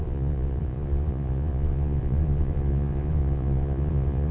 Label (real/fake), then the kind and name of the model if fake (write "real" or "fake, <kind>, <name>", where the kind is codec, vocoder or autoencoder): fake, vocoder, Vocos